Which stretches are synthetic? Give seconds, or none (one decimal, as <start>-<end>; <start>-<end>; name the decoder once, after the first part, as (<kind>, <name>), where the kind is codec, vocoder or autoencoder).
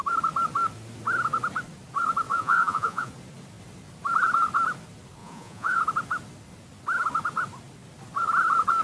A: 2.3-3.1 (vocoder, Vocos); 5.2-5.8